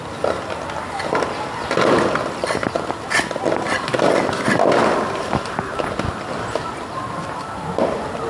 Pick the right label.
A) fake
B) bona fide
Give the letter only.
B